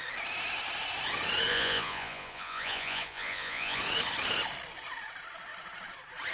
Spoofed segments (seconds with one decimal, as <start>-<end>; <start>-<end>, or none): 1.5-3.8